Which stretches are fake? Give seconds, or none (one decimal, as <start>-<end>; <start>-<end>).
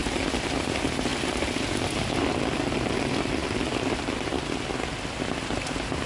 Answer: 1.1-1.7; 3.4-4.7